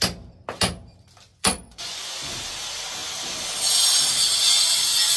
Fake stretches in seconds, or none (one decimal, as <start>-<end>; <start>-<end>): 1.3-2.3